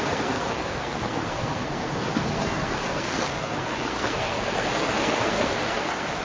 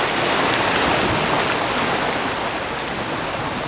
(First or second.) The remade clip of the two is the first